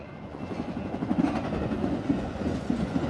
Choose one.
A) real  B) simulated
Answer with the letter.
B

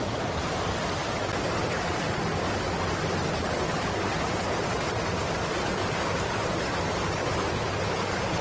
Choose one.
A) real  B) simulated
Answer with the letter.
A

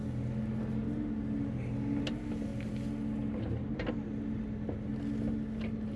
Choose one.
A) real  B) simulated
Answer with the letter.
A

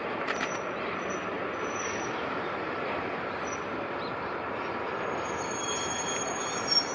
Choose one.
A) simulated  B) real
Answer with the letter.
B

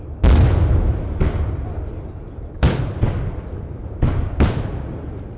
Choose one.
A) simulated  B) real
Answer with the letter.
B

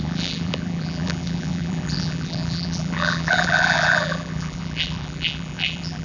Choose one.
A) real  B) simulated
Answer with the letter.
B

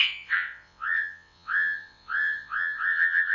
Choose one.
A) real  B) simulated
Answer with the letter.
B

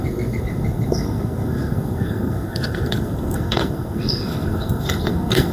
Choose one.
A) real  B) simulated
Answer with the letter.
B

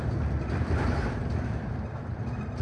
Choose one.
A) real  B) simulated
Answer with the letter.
A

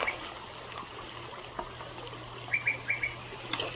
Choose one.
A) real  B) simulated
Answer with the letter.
A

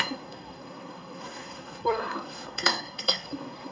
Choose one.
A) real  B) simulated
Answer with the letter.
B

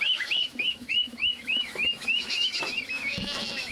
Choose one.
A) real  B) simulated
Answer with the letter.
B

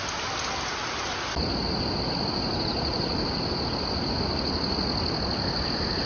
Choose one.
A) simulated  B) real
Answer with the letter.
B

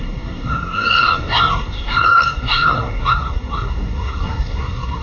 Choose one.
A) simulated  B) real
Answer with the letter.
A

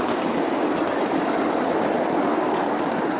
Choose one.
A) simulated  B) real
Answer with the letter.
B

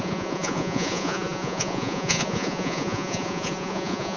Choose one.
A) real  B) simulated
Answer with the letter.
B